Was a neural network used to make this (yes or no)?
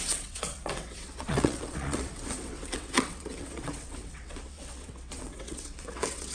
yes